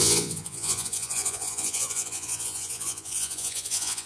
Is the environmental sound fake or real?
fake